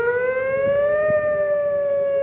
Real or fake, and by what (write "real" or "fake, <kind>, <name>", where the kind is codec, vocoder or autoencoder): real